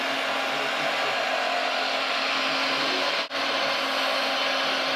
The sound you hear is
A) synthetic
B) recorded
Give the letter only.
B